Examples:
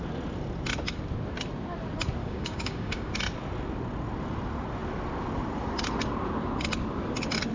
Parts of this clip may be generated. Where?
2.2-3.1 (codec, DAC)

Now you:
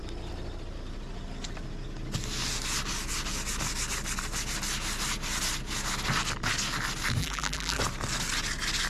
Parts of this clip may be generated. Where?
7.2-7.8 (vocoder, BigVGAN v2)

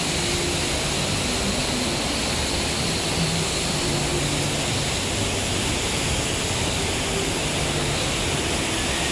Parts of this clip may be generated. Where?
none

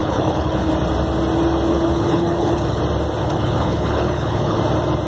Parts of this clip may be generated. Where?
0.0-0.7 (codec, HILCodec); 1.7-2.8; 3.2-4.6

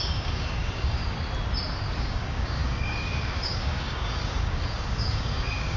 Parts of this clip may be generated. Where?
0.0-1.0 (codec, DAC); 2.0-5.8

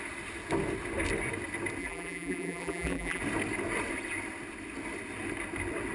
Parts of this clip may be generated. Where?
1.8-3.2 (vocoder, BigVGAN v2)

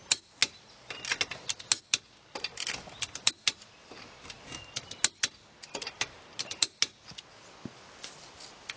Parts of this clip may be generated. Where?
none